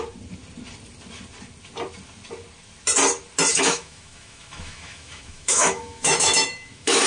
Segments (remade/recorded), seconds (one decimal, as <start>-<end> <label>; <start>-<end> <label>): 0.0-3.5 recorded; 3.5-7.1 remade